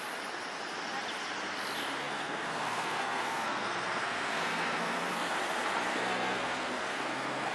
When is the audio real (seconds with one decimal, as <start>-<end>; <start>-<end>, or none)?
0.0-2.0; 5.3-5.9